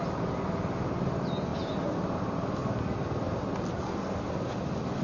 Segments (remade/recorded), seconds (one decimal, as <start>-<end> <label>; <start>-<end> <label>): 0.0-2.6 recorded; 2.6-3.9 remade; 3.9-5.0 recorded